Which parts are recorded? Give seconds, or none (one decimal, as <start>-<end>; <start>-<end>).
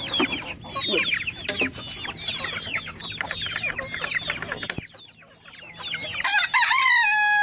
0.0-7.4